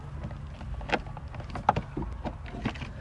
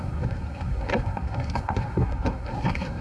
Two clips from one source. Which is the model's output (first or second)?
second